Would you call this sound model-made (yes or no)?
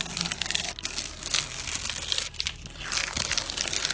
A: no